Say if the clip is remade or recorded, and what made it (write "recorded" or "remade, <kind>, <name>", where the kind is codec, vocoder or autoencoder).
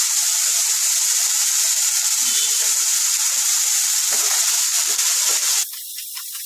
recorded